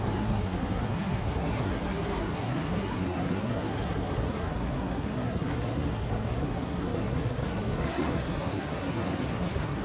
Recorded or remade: remade